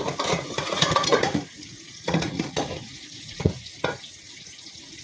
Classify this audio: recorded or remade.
remade